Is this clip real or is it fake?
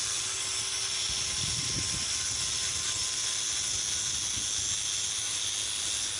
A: real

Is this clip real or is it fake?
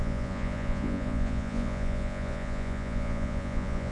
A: fake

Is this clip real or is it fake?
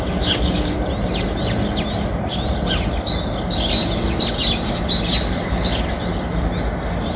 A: real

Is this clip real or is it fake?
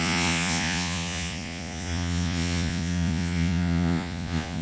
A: fake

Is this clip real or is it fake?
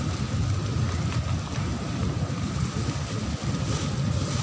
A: real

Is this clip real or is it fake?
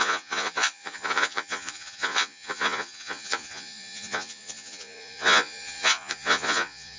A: fake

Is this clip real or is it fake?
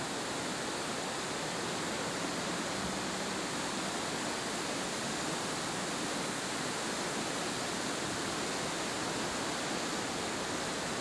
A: real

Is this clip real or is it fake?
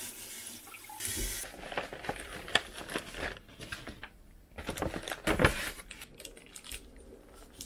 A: real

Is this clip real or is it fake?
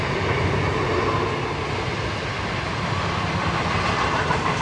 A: real